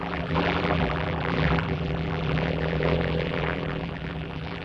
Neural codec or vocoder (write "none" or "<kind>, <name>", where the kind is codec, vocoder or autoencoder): vocoder, BigVGAN v2